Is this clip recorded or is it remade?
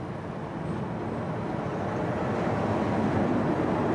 recorded